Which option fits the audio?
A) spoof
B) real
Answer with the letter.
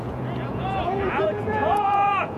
A